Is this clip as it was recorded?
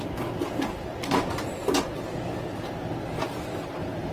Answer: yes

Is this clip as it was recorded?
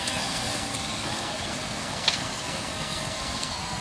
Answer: no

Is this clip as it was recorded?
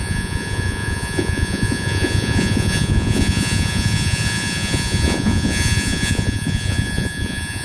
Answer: no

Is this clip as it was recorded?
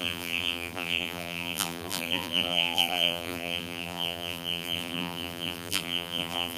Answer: no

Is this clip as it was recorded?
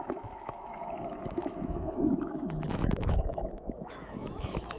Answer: no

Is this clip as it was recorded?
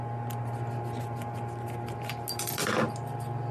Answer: yes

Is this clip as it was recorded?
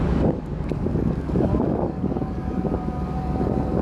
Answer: no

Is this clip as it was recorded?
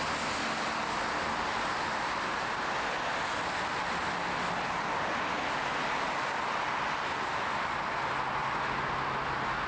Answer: yes